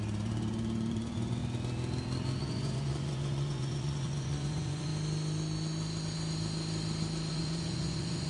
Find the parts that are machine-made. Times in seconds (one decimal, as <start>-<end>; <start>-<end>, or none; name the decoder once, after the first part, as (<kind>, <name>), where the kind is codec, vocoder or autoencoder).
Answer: 0.0-1.4 (vocoder, Vocos); 2.4-4.9; 7.3-8.3